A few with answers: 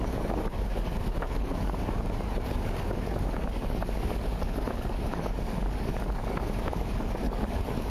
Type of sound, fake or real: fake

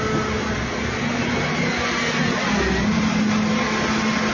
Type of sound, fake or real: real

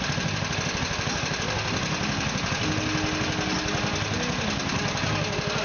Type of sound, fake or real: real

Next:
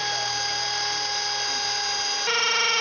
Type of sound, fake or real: real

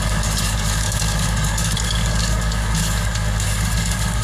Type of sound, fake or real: fake